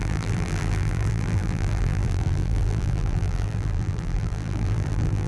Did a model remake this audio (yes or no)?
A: yes